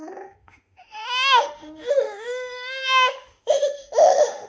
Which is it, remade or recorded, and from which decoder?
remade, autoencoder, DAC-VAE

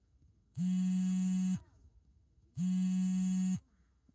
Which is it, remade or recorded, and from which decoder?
remade, autoencoder, DAC-VAE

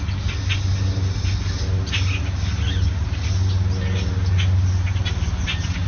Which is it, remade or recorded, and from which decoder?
recorded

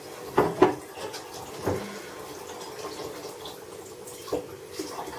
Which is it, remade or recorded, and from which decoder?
recorded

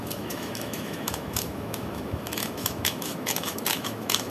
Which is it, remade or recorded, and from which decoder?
remade, autoencoder, DAC-VAE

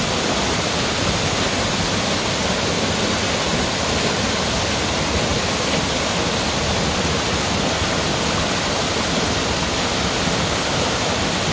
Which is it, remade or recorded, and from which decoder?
recorded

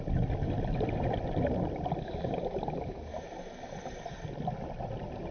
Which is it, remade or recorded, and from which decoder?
recorded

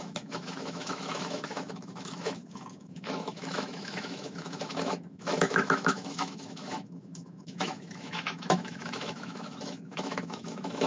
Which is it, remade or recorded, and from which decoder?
remade, autoencoder, DAC-VAE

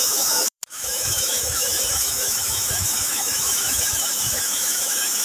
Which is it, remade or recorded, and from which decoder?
remade, autoencoder, DAC-VAE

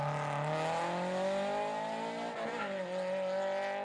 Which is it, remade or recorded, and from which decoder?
recorded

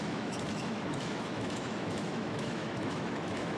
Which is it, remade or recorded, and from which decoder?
remade, autoencoder, DAC-VAE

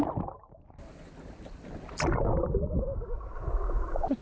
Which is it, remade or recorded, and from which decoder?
recorded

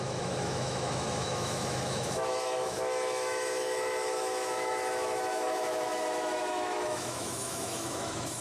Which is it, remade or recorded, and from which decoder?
remade, autoencoder, DAC-VAE